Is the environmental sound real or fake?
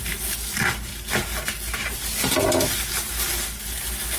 real